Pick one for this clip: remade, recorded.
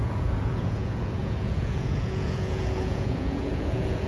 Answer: remade